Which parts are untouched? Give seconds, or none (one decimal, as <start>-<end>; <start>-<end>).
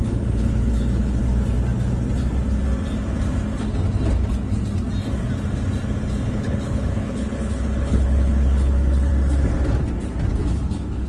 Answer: 1.2-6.3; 9.1-10.7